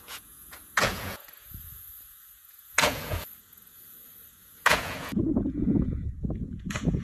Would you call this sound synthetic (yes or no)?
yes